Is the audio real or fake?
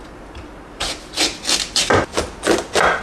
real